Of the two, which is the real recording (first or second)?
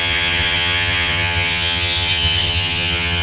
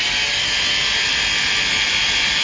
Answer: second